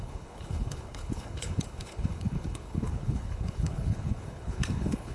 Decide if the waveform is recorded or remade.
remade